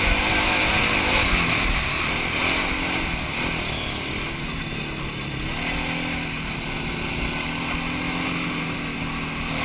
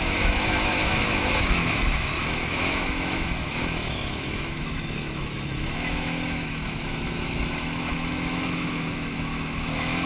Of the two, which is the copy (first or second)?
second